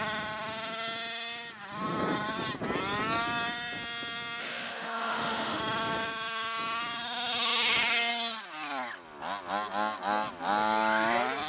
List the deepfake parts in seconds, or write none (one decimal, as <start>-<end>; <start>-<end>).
4.4-5.6